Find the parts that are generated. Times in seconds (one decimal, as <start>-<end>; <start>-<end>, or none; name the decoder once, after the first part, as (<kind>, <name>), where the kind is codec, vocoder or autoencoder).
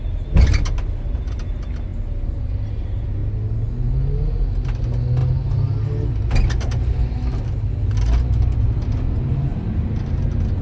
none